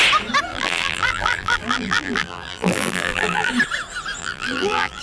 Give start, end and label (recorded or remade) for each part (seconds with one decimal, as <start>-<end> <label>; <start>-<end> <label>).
0.0-0.5 recorded; 0.5-3.5 remade; 3.5-4.2 recorded; 4.2-5.0 remade